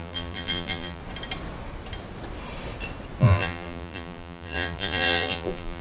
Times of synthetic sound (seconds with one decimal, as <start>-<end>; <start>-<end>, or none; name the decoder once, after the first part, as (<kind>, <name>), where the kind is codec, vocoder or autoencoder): 0.0-1.0 (vocoder, BigVGAN v2); 3.2-5.8